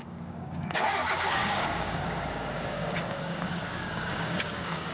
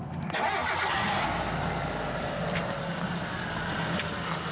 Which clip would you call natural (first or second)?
second